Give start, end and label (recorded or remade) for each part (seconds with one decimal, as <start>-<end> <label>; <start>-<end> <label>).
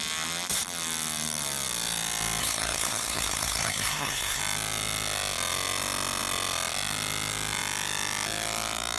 0.0-2.4 recorded; 2.4-4.4 remade; 4.4-9.0 recorded